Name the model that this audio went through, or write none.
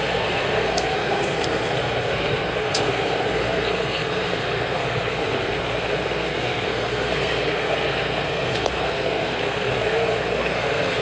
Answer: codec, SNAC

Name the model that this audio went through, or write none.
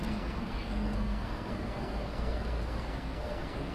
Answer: codec, SNAC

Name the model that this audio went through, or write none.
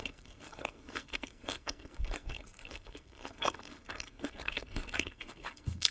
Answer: codec, SNAC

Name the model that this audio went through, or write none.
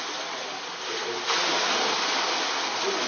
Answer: none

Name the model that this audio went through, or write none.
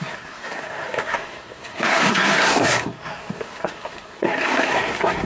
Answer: codec, SNAC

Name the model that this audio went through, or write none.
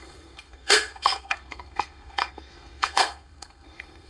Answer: codec, SNAC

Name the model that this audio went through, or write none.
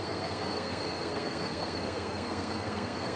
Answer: codec, SNAC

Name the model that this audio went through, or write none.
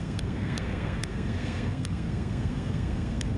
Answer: codec, SNAC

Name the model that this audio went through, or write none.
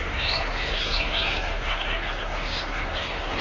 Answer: codec, SNAC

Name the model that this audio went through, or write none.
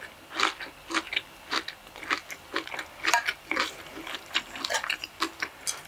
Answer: none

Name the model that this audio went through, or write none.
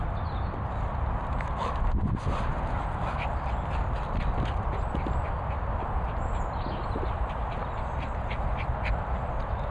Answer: none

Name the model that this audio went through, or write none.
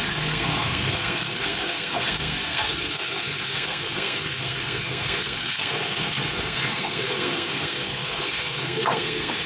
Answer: codec, SNAC